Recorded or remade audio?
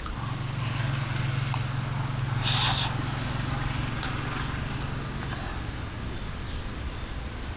recorded